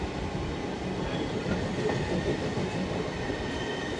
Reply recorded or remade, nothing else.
recorded